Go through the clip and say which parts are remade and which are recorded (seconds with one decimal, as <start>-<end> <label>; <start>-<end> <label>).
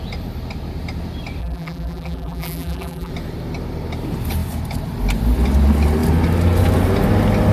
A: 0.0-1.4 recorded; 1.4-3.1 remade; 3.1-7.5 recorded